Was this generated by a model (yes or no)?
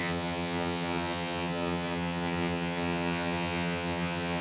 yes